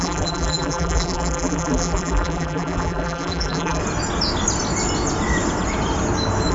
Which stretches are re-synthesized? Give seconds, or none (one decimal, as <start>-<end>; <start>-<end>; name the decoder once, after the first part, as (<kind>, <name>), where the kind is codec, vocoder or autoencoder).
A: 0.0-3.8 (vocoder, BigVGAN v2)